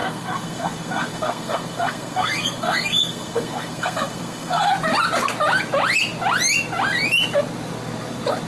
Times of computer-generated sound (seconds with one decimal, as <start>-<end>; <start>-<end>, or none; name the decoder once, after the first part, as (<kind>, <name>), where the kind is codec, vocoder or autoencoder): 0.0-4.7 (codec, SNAC)